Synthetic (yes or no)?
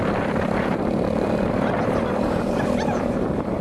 yes